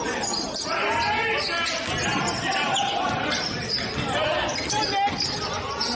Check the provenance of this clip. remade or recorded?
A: recorded